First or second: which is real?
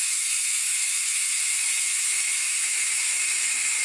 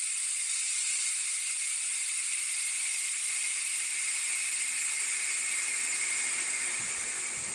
second